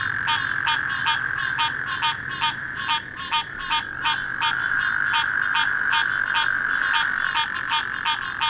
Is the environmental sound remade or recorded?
recorded